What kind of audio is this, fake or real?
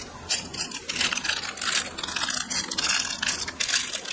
real